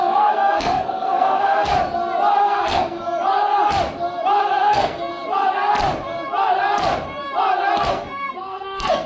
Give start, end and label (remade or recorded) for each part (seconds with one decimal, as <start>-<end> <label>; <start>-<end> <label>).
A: 0.0-1.7 remade; 1.7-2.4 recorded; 2.4-3.0 remade; 3.0-4.4 recorded; 4.4-5.1 remade; 5.1-7.9 recorded; 7.9-9.1 remade